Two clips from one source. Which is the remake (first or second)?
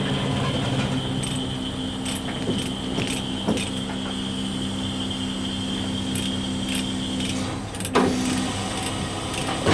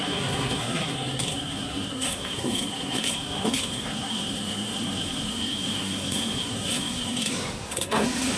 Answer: second